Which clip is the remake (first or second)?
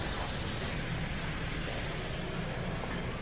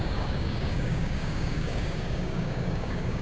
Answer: second